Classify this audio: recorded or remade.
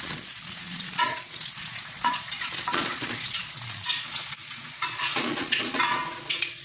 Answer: remade